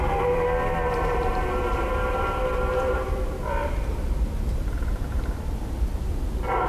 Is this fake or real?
fake